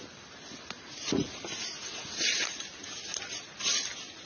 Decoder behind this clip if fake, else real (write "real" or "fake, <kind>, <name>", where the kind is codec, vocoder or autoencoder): real